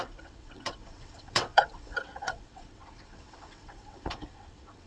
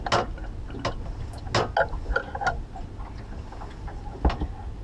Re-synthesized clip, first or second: first